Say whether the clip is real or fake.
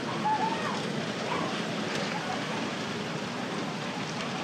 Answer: real